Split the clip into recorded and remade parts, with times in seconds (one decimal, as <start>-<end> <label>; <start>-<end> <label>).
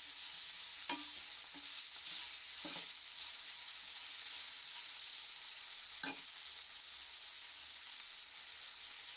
0.0-5.1 recorded; 5.1-5.6 remade; 5.6-9.2 recorded